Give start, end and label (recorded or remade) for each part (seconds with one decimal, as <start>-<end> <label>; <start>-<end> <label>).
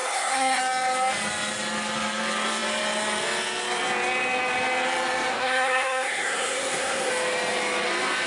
0.0-0.6 remade; 0.6-5.3 recorded; 5.3-7.1 remade; 7.1-8.3 recorded